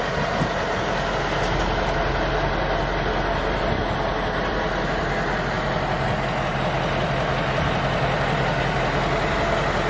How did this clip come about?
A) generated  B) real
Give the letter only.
B